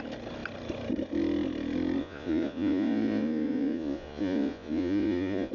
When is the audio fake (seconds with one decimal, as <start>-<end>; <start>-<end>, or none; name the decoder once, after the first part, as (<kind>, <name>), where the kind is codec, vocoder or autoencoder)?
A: 2.0-5.5 (vocoder, Vocos)